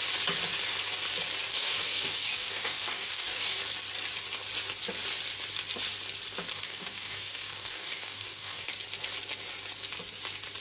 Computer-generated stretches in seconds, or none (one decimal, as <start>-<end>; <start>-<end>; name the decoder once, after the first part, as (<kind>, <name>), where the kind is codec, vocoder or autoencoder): 1.5-3.6 (codec, DAC); 6.5-8.7